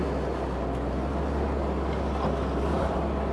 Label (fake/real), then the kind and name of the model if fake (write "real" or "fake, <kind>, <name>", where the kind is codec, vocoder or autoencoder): real